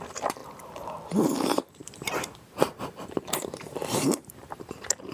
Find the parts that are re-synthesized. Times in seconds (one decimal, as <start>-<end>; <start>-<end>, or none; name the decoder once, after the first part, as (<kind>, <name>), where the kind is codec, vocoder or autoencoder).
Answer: 0.0-0.4 (vocoder, BigVGAN v2); 1.4-5.1